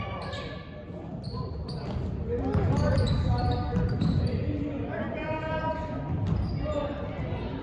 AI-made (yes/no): no